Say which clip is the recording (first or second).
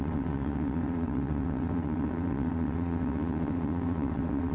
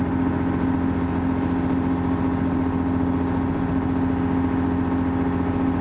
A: second